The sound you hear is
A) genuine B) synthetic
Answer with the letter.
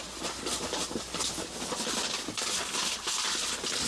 A